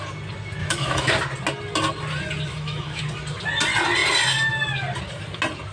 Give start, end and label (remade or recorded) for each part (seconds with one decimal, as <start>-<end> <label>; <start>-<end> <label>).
0.0-0.6 recorded; 0.6-1.1 remade; 1.1-2.5 recorded; 2.5-3.0 remade; 3.0-5.7 recorded